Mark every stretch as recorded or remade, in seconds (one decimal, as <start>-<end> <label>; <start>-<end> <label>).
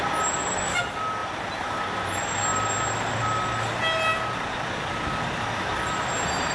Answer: 0.0-1.2 recorded; 1.2-2.0 remade; 2.0-6.5 recorded